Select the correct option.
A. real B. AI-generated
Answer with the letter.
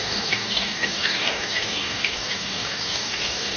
B